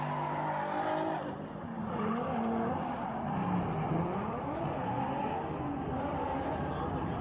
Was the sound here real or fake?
real